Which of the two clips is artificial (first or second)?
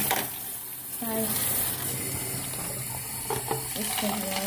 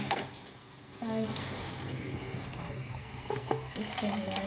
second